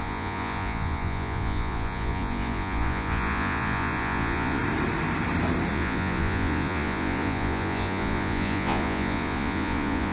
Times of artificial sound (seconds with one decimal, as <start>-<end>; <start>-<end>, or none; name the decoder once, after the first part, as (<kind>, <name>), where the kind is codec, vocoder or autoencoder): 0.0-4.6 (vocoder, Vocos); 5.7-10.1